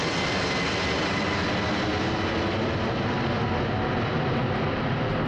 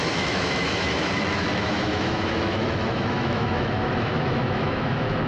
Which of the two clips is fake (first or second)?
second